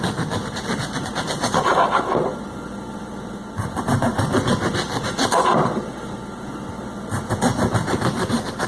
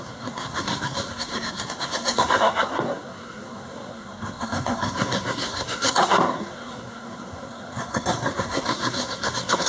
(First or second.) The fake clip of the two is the second